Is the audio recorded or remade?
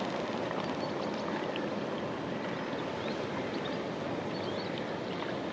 recorded